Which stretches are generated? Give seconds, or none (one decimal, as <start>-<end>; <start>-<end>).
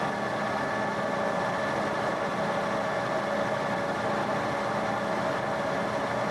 none